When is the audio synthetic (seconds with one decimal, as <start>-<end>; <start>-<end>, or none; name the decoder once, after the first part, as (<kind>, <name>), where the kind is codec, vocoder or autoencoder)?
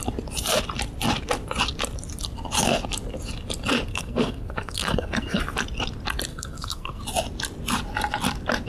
3.9-5.4 (codec, SNAC); 6.3-7.0